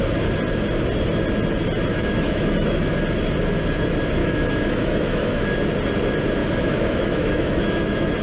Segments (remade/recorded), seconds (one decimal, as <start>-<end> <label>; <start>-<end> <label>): 0.0-1.9 recorded; 1.9-2.9 remade; 2.9-4.2 recorded; 4.2-5.5 remade; 5.5-6.4 recorded; 6.4-8.2 remade